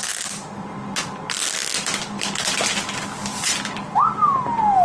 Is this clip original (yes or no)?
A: yes